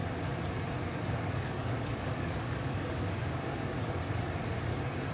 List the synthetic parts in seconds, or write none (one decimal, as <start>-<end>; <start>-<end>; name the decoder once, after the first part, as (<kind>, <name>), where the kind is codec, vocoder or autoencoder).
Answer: 0.9-4.0 (codec, DAC)